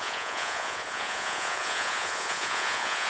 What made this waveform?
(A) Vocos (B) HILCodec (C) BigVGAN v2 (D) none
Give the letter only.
A